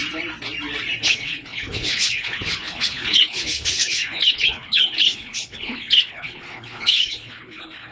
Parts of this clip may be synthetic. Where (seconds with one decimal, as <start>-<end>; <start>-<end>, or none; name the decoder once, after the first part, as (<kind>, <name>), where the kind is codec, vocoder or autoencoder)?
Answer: 1.0-7.9 (codec, HILCodec)